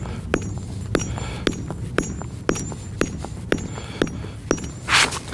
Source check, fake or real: real